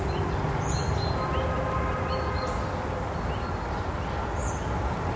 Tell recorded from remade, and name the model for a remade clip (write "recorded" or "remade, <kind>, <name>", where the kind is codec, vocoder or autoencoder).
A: recorded